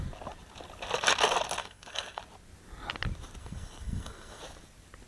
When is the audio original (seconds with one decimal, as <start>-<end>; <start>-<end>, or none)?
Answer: 0.0-1.6; 2.2-3.4; 4.4-5.1